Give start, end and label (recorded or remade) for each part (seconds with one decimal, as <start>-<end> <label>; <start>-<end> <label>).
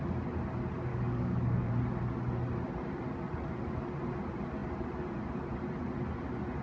0.0-0.9 recorded; 0.9-1.7 remade; 1.7-6.6 recorded